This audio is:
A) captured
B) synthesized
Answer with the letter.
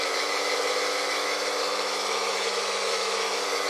B